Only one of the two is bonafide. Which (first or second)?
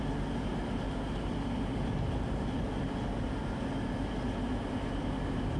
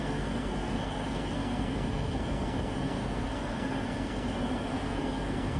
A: first